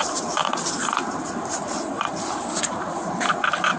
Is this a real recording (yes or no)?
no